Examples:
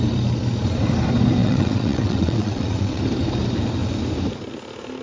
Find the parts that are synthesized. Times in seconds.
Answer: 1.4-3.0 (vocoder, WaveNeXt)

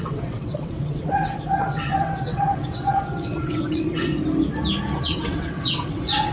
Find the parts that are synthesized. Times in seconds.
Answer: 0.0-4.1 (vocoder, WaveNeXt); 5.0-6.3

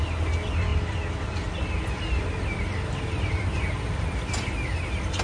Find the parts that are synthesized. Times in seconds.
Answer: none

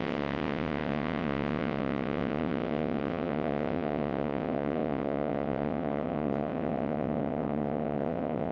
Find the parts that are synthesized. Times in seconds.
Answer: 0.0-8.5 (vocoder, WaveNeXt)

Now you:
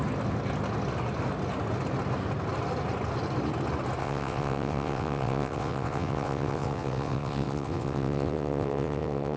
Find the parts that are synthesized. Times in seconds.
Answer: 4.0-9.4 (vocoder, WaveNeXt)